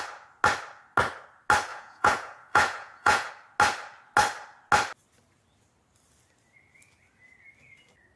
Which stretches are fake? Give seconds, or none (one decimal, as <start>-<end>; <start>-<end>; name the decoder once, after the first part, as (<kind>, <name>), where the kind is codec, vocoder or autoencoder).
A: 1.7-3.3 (vocoder, Vocos)